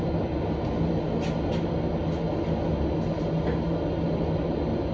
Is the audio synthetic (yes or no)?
no